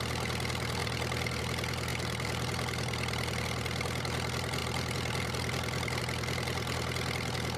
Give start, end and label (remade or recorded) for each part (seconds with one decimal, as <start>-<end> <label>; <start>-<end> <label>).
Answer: 0.0-1.9 recorded; 1.9-3.4 remade; 3.4-4.6 recorded; 4.6-6.0 remade; 6.0-7.6 recorded